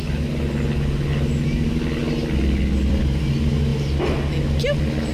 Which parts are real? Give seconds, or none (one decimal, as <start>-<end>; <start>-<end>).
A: 0.0-5.1